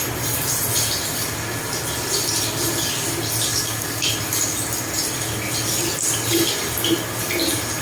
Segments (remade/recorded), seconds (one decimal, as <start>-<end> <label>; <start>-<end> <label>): 0.0-3.5 recorded; 3.5-4.1 remade; 4.1-7.8 recorded